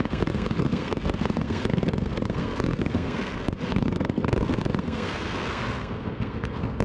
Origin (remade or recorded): remade